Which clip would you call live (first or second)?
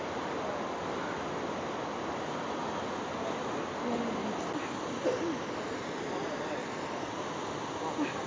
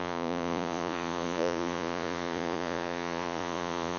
first